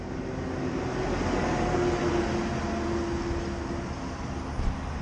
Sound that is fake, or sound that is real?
real